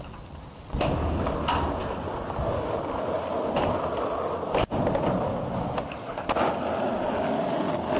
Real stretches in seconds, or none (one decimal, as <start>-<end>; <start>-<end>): 0.0-8.0